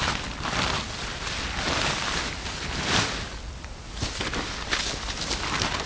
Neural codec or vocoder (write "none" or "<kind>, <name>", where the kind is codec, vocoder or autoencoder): none